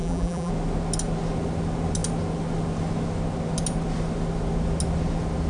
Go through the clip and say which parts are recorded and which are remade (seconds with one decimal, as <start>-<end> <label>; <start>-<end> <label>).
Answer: 0.0-0.5 remade; 0.5-5.5 recorded